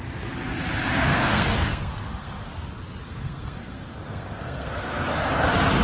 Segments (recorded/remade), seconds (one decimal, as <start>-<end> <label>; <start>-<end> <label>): 0.0-1.1 recorded; 1.1-2.5 remade; 2.5-3.1 recorded; 3.1-5.3 remade; 5.3-5.8 recorded